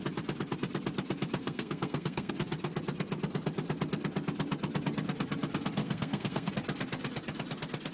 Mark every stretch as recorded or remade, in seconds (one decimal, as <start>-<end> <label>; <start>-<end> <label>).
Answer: 0.0-1.4 recorded; 1.4-2.3 remade; 2.3-5.8 recorded; 5.8-6.5 remade; 6.5-7.9 recorded